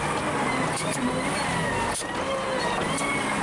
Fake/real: real